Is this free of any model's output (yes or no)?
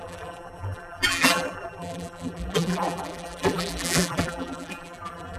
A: no